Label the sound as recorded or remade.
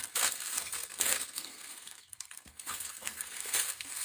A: remade